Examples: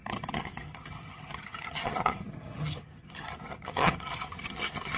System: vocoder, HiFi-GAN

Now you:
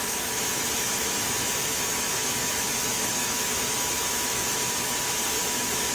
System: autoencoder, DAC-VAE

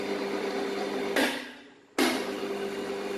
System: none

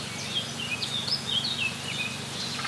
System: vocoder, Vocos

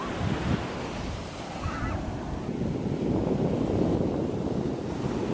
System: none